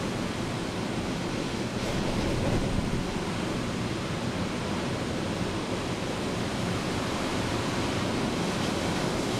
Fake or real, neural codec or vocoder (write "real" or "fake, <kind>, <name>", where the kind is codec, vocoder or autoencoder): real